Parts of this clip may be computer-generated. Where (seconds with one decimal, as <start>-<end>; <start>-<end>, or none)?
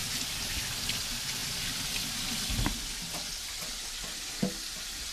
none